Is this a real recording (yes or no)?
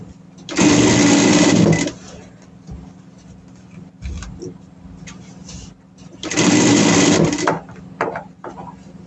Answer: yes